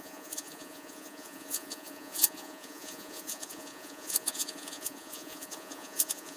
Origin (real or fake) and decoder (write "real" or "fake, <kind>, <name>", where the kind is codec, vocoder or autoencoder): fake, vocoder, Vocos